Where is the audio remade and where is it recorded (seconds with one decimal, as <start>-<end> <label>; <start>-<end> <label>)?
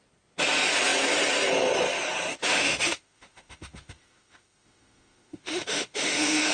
0.0-2.5 recorded; 2.5-6.5 remade